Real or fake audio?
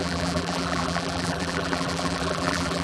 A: fake